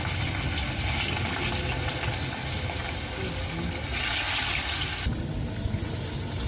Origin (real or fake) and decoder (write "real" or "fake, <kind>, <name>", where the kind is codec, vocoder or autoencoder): real